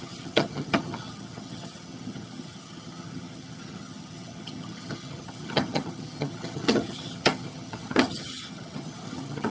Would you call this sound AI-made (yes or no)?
yes